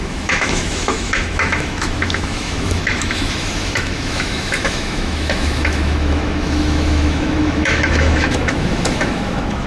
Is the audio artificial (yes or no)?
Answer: yes